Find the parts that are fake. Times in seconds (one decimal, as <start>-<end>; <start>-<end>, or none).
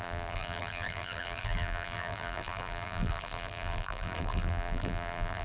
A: 0.0-5.4